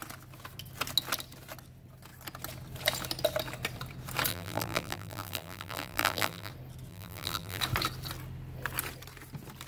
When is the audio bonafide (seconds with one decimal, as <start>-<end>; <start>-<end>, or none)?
0.0-4.3; 6.5-6.9; 7.6-9.7